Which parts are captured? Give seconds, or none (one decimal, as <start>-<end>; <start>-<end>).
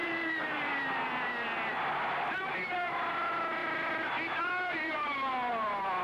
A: 0.7-6.0